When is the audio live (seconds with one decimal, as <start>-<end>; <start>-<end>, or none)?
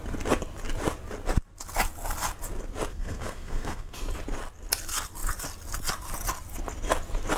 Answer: 0.0-2.9; 4.0-7.4